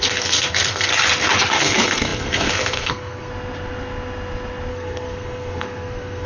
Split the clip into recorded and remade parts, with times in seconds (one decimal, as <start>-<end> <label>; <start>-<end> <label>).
0.0-0.9 remade; 0.9-1.6 recorded; 1.6-3.3 remade; 3.3-4.7 recorded; 4.7-6.3 remade